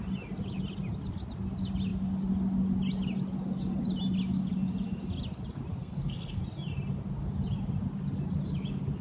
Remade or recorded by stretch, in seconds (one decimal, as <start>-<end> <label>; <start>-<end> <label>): 0.0-5.8 recorded; 5.8-6.4 remade; 6.4-9.0 recorded